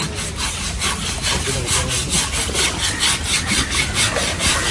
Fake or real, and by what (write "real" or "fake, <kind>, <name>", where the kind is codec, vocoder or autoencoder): real